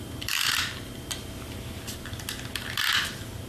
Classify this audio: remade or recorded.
recorded